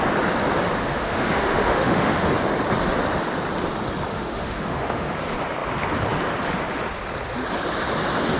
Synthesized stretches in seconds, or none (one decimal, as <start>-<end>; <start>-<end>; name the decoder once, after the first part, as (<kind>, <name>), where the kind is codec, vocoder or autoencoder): 0.9-2.3 (autoencoder, DAC-VAE); 4.1-5.1